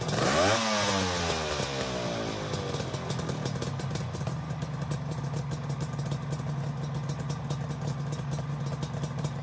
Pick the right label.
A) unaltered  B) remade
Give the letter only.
A